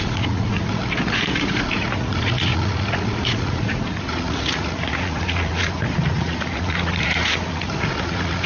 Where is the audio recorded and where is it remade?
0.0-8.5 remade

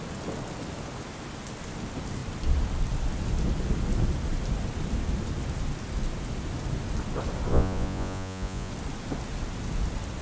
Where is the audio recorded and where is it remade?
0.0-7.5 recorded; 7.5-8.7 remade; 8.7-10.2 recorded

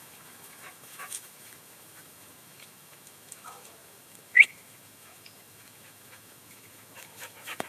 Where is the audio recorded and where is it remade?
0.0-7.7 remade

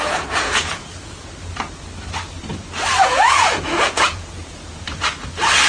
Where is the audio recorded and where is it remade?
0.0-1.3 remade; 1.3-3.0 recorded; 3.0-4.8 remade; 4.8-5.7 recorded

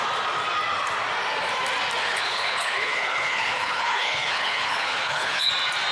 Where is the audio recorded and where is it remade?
0.0-2.0 recorded; 2.0-5.5 remade; 5.5-5.9 recorded

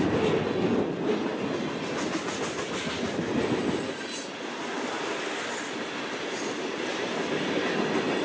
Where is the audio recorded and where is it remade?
0.0-8.2 recorded